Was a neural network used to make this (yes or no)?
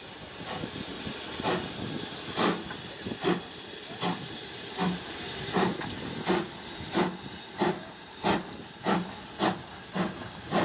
no